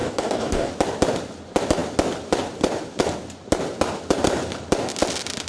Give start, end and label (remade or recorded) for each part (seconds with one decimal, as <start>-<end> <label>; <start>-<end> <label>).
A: 0.0-0.7 remade; 0.7-5.5 recorded